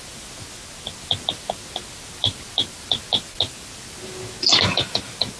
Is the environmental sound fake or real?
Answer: real